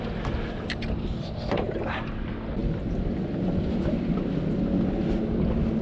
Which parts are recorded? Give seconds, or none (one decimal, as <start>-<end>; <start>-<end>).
0.0-5.8

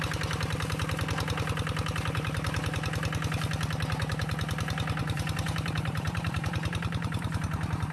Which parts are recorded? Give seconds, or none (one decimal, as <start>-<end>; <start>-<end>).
0.0-5.0; 7.4-7.9